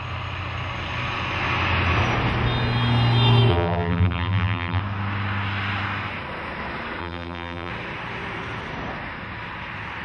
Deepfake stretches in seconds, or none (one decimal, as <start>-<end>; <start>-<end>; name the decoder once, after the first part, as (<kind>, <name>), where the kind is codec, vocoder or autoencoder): 3.5-4.8 (vocoder, BigVGAN v2); 7.0-7.7